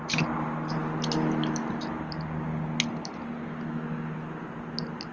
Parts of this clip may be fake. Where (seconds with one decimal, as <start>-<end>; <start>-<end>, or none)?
none